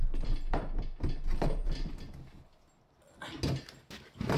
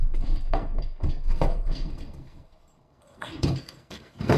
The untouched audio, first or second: first